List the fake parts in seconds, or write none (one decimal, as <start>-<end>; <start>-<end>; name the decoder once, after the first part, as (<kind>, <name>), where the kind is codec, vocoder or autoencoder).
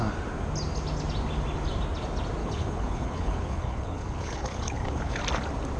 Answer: 2.4-5.2 (codec, HILCodec)